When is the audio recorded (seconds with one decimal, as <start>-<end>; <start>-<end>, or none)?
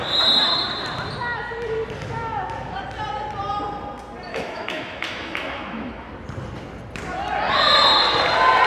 0.0-4.3; 6.1-8.7